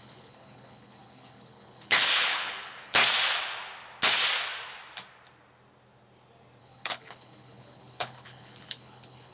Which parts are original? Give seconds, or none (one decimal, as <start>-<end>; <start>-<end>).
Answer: 3.0-6.6